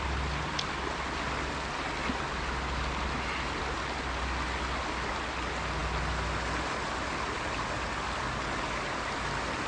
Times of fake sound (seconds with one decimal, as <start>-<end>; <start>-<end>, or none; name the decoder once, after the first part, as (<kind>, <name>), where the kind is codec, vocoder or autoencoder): none